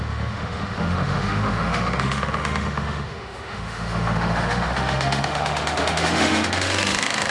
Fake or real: fake